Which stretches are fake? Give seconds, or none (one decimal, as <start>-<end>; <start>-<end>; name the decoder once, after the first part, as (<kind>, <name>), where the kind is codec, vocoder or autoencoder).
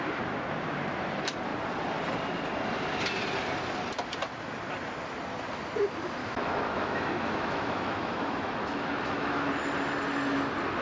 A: 6.2-9.5 (autoencoder, DAC-VAE)